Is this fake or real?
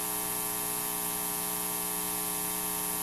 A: real